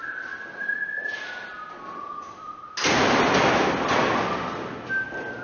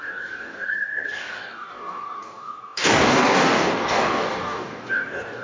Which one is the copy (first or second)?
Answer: second